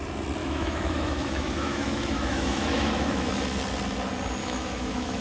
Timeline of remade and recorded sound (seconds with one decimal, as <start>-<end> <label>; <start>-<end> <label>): 0.0-0.4 recorded; 0.4-3.3 remade; 3.3-4.4 recorded; 4.4-5.2 remade